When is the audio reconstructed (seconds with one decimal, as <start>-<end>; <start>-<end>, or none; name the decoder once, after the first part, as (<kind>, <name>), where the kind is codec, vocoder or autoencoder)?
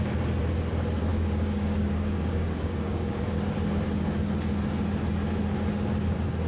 1.1-3.2 (codec, DAC)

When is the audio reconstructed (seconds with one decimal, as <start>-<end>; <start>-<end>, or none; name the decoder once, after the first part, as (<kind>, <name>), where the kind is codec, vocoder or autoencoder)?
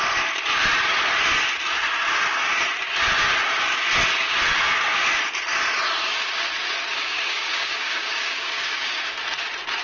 7.0-9.1 (codec, DAC)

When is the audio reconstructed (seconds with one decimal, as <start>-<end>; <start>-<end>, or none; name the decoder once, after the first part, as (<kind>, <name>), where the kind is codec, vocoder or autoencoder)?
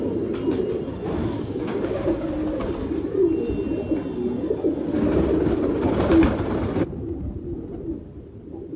1.2-2.3 (codec, DAC)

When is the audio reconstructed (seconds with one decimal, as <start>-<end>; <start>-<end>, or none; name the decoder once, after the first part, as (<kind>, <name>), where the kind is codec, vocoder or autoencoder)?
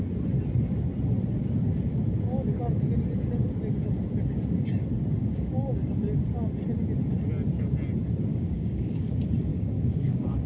5.2-5.9 (codec, DAC); 8.3-9.1; 9.5-10.5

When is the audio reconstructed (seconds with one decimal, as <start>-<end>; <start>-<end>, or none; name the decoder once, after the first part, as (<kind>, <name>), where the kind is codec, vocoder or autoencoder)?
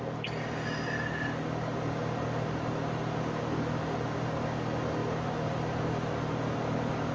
none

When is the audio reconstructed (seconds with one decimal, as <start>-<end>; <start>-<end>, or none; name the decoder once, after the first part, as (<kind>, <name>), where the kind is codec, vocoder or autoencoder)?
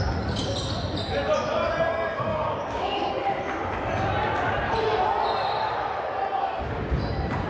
2.3-3.1 (codec, DAC)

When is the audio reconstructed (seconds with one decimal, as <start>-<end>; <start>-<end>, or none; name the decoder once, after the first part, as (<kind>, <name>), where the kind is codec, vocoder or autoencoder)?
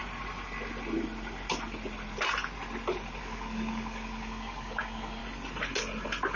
3.2-5.2 (codec, DAC)